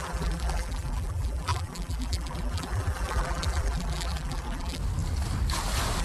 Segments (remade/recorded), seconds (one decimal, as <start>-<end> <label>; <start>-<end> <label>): 0.0-4.8 remade; 4.8-6.0 recorded